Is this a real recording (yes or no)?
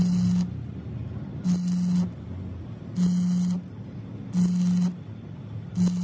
yes